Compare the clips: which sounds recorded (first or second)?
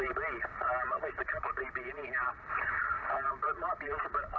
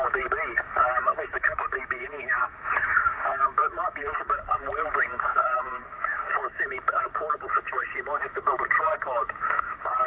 first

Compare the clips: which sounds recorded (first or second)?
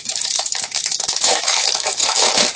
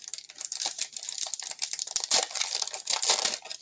second